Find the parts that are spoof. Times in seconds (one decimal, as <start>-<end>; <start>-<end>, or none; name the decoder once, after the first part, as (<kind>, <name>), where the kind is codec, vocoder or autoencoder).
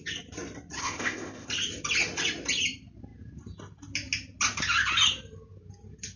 0.8-1.5 (codec, ZipCodec)